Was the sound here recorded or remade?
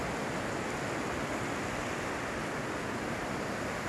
recorded